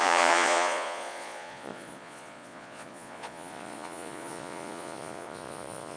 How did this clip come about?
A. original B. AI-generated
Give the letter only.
B